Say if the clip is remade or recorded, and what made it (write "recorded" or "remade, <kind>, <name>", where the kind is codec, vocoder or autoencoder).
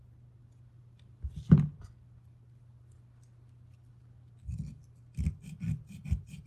recorded